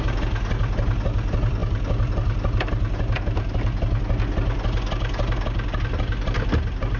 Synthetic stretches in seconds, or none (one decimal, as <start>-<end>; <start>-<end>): none